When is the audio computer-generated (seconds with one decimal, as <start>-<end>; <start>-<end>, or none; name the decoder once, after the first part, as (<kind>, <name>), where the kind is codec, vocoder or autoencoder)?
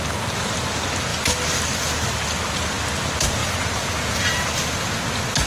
3.4-4.5 (vocoder, Vocos)